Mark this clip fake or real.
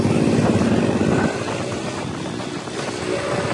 real